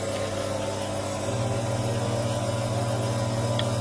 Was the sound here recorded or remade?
recorded